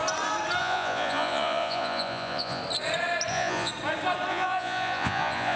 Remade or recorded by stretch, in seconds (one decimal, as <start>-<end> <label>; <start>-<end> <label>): 0.0-0.6 recorded; 0.6-2.6 remade; 2.6-3.3 recorded; 3.3-3.7 remade; 3.7-4.3 recorded; 4.3-5.6 remade